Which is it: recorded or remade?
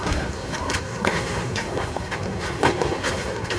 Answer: remade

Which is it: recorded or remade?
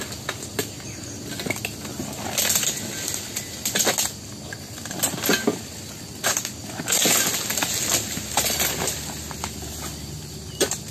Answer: recorded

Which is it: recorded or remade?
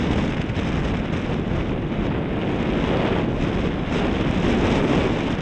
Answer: recorded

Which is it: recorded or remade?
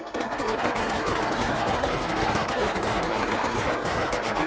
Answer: remade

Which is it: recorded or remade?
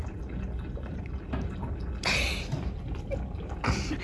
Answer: recorded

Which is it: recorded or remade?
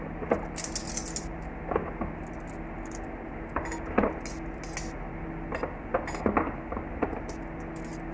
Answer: recorded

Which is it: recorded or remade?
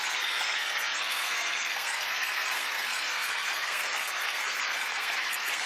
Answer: remade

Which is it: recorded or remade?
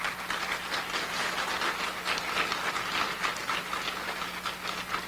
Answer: recorded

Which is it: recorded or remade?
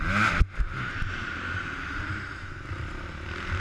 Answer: recorded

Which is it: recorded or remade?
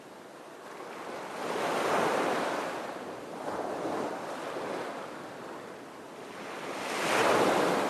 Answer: recorded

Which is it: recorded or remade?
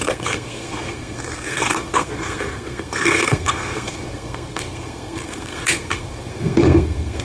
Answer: remade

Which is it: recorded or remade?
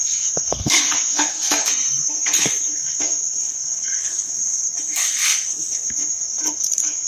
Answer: remade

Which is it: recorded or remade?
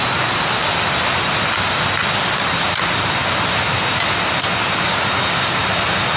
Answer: recorded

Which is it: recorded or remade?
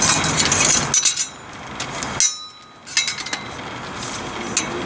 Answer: recorded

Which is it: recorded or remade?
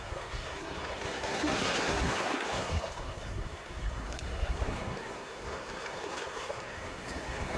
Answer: remade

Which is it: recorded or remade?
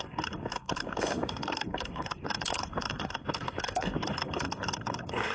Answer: remade